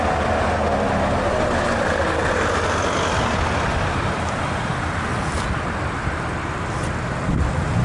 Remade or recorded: recorded